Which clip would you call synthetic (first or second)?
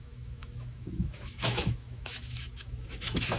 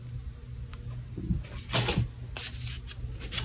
first